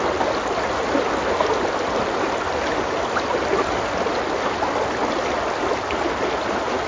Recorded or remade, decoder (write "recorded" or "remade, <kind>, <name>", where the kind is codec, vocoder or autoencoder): recorded